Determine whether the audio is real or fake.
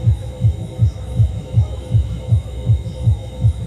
fake